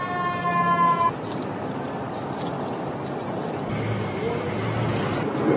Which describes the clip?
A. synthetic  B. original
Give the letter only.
B